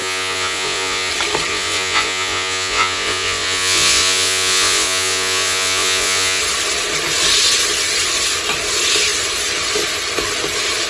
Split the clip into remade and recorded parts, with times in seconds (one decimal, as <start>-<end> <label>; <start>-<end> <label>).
0.0-1.1 remade; 1.1-1.5 recorded; 1.5-6.4 remade; 6.4-10.9 recorded